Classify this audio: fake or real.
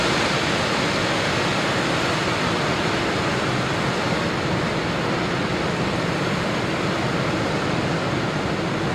real